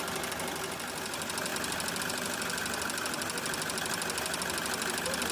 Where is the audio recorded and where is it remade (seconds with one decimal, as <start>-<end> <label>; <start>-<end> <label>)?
0.0-5.3 recorded